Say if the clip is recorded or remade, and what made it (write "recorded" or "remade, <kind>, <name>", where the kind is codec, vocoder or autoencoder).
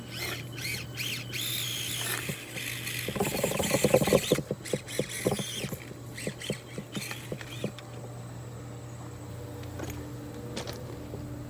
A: recorded